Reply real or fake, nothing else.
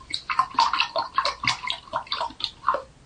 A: real